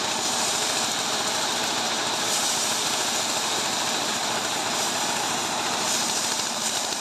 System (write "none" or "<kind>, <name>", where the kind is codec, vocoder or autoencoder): vocoder, BigVGAN v2